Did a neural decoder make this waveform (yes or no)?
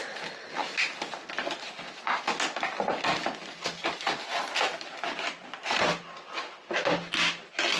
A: no